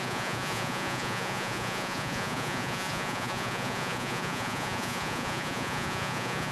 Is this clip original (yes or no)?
no